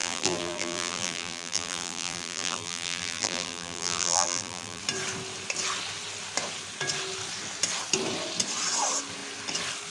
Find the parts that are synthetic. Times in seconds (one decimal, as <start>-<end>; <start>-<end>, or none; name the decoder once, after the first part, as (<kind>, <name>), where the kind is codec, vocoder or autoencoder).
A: 0.0-4.8 (vocoder, BigVGAN v2)

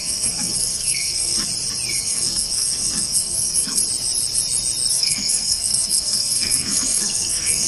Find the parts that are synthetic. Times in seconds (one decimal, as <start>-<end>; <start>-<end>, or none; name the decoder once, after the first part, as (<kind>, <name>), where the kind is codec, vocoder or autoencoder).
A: 0.0-1.5 (codec, SNAC); 2.0-3.8; 4.9-7.7

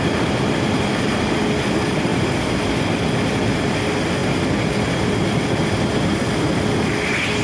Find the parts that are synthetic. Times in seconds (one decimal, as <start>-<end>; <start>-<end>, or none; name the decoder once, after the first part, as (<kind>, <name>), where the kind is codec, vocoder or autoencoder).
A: none

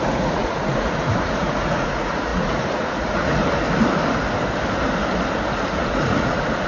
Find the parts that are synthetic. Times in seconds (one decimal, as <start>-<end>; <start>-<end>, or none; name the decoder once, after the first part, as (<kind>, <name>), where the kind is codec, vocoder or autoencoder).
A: 0.0-3.4 (vocoder, Vocos); 5.7-6.7

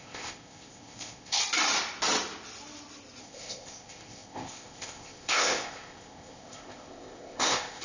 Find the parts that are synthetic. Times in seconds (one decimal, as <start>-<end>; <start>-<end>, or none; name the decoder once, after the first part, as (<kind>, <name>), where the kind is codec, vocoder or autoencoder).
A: 0.0-1.4 (codec, ZipCodec); 3.2-7.8

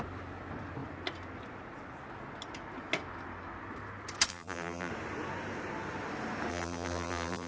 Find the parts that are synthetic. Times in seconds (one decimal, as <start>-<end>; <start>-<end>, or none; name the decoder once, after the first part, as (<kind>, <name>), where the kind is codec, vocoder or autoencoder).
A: 4.3-4.9 (vocoder, BigVGAN v2); 6.5-7.5

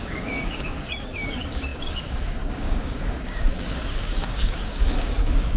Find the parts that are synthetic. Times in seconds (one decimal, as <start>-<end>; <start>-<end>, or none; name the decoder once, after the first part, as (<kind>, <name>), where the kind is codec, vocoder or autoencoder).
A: 0.0-5.6 (codec, DAC)